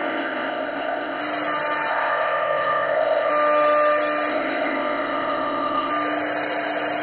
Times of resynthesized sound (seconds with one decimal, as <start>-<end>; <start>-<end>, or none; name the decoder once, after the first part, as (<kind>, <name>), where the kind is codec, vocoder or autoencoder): 0.0-1.2 (codec, ZipCodec); 1.9-3.3; 4.3-5.9